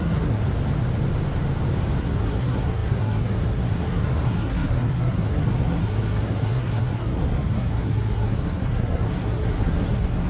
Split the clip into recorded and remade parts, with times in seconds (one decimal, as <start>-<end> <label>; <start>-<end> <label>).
0.0-0.4 remade; 0.4-2.0 recorded; 2.0-10.3 remade